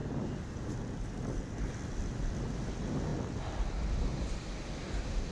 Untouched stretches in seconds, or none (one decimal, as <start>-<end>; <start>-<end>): 0.0-5.3